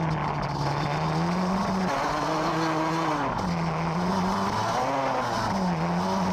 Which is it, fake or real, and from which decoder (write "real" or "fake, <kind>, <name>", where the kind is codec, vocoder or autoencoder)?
real